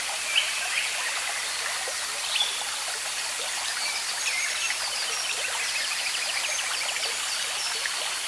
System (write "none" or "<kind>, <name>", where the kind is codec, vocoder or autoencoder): none